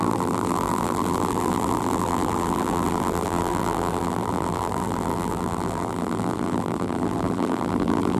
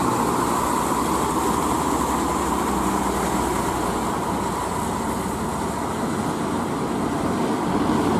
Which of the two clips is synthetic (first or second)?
first